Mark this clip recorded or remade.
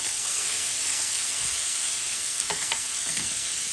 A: remade